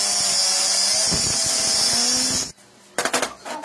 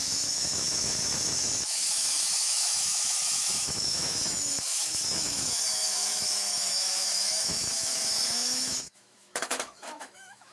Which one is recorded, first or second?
first